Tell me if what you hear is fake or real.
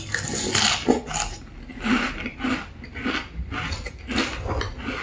real